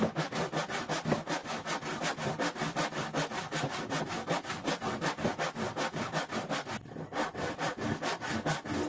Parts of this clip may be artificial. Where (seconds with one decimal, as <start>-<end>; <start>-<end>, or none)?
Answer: none